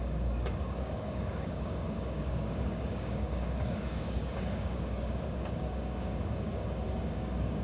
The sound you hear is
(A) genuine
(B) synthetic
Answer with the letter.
B